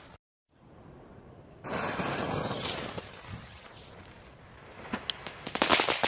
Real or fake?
real